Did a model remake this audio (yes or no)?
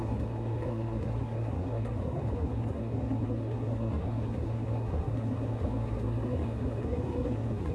yes